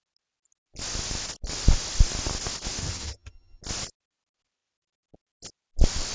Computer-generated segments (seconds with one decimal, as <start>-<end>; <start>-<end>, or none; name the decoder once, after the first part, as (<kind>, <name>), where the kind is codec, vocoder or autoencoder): 2.8-3.6 (vocoder, HiFi-GAN)